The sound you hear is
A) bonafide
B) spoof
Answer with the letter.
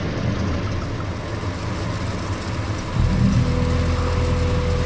A